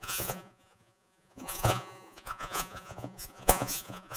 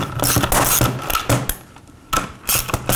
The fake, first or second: first